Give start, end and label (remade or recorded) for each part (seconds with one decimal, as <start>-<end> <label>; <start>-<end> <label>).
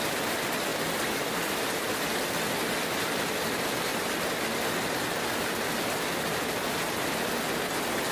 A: 0.0-0.7 recorded; 0.7-2.0 remade; 2.0-8.1 recorded